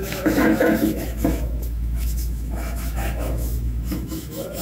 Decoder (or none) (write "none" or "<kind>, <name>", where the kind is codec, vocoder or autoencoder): autoencoder, DAC-VAE